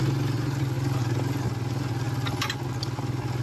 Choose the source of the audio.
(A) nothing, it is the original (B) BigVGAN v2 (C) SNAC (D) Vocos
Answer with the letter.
A